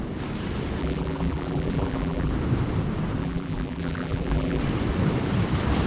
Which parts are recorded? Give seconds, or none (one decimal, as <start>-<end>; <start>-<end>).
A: 0.0-0.8; 2.3-3.2; 4.6-5.9